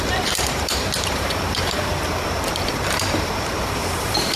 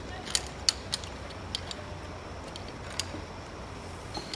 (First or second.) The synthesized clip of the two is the first